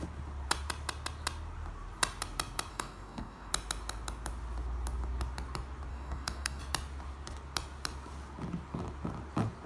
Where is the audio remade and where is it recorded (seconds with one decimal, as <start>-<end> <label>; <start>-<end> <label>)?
0.0-2.7 recorded; 2.7-3.5 remade; 3.5-5.9 recorded; 5.9-6.6 remade; 6.6-9.7 recorded